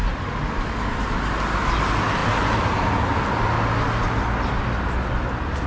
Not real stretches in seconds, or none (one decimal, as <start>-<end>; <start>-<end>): none